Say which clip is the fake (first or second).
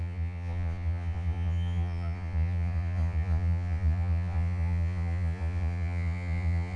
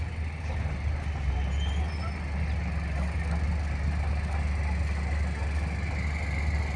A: first